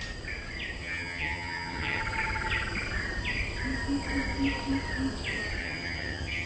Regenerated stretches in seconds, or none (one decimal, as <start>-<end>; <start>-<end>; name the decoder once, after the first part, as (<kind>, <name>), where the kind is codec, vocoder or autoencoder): 0.8-2.0 (vocoder, HiFi-GAN); 5.6-6.5